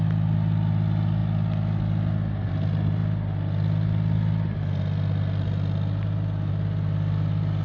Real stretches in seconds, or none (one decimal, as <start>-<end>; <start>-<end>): 0.0-7.6